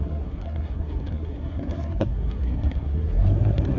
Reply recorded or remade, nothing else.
remade